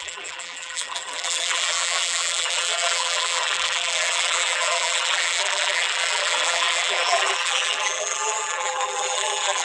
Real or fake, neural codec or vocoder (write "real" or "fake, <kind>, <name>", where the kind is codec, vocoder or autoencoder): fake, vocoder, BigVGAN v2